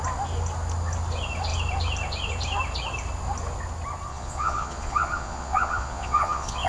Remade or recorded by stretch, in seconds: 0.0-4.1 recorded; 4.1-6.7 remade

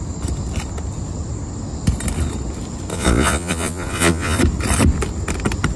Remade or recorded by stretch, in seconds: 0.0-2.9 recorded; 2.9-4.4 remade; 4.4-5.8 recorded

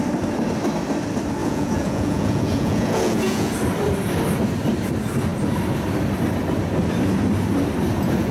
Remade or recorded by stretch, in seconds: 0.0-1.4 recorded; 1.4-3.5 remade; 3.5-8.3 recorded